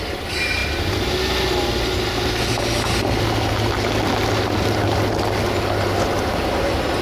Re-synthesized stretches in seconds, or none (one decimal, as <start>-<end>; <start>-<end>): 0.6-1.1